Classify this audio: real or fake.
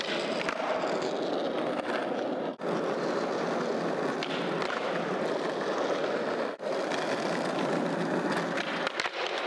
real